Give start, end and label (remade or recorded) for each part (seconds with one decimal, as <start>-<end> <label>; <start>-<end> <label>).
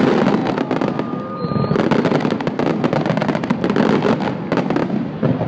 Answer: 0.0-5.5 recorded